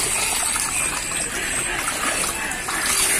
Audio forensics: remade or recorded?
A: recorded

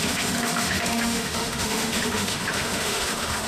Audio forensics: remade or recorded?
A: remade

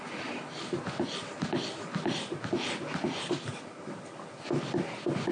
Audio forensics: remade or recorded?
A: recorded